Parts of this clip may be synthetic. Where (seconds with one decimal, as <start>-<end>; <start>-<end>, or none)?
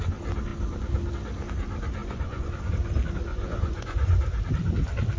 2.0-2.6; 3.3-4.1